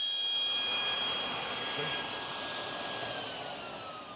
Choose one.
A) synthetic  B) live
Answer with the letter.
B